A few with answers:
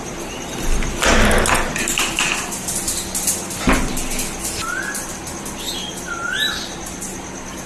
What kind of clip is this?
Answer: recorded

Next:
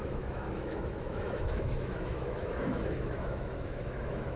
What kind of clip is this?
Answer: remade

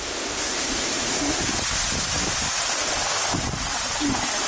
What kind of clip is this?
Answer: recorded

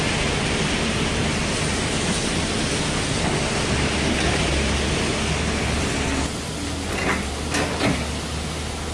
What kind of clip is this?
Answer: recorded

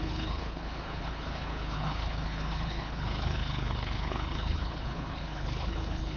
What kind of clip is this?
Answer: remade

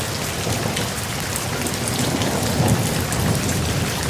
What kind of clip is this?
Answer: recorded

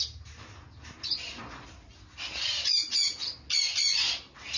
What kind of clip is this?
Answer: recorded